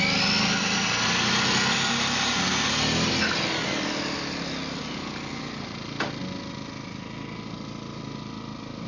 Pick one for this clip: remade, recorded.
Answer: recorded